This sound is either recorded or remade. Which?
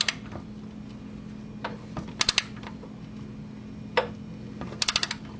recorded